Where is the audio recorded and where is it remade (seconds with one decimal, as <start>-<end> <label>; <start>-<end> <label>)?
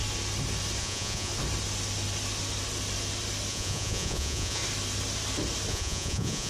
0.0-0.8 recorded; 0.8-1.3 remade; 1.3-3.5 recorded; 3.5-4.6 remade; 4.6-5.7 recorded; 5.7-6.5 remade